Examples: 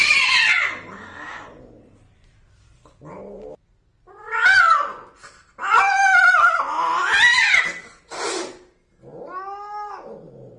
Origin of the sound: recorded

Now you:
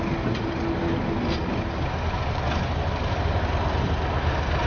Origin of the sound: recorded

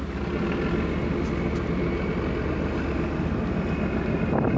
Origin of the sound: recorded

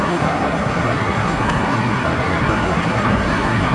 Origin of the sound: remade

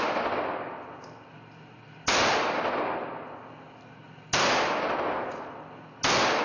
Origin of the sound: recorded